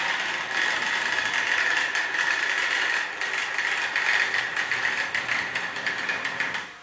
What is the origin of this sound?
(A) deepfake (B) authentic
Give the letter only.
B